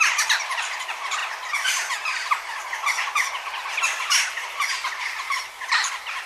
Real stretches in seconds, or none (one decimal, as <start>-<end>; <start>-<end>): 1.2-5.0